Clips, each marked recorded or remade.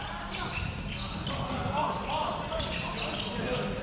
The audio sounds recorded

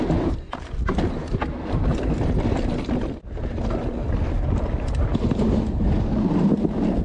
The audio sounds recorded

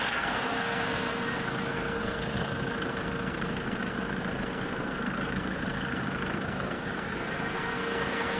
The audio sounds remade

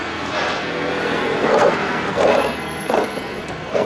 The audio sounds remade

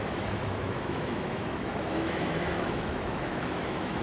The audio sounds remade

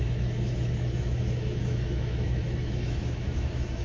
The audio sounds remade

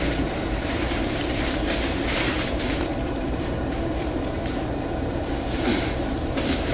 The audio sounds remade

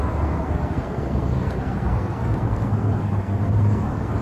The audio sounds remade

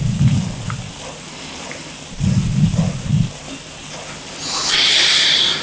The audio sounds recorded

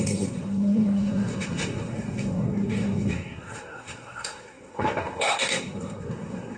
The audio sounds remade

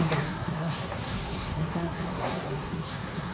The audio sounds remade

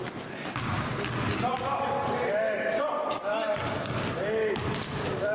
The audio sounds recorded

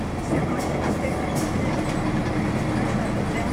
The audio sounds recorded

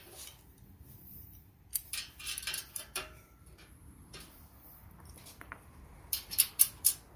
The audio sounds remade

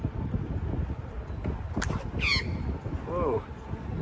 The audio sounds recorded